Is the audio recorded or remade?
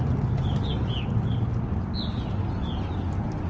recorded